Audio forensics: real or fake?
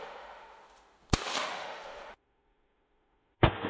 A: fake